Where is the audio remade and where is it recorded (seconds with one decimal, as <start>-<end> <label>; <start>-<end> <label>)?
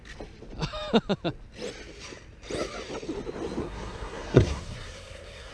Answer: 0.0-3.6 recorded; 3.6-5.5 remade